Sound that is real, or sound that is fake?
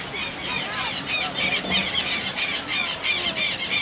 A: real